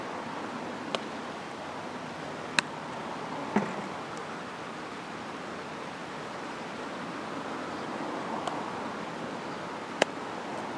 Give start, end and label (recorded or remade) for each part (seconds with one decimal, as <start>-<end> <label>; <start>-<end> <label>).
0.0-10.8 recorded